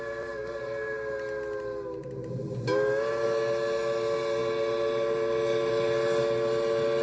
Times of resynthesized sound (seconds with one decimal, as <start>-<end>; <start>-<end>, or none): none